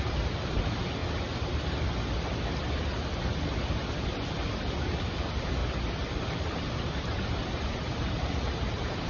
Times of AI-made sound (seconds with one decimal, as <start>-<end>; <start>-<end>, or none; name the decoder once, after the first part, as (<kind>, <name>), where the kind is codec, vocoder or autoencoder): 0.0-1.0 (vocoder, BigVGAN v2); 5.0-5.6; 6.3-9.1